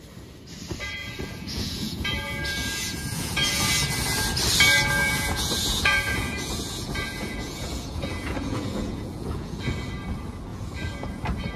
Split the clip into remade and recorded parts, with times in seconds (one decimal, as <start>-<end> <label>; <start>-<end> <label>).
0.0-1.0 recorded; 1.0-3.6 remade; 3.6-5.0 recorded; 5.0-9.9 remade; 9.9-10.5 recorded; 10.5-11.2 remade; 11.2-11.6 recorded